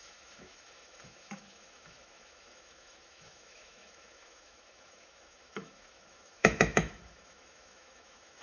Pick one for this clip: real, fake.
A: fake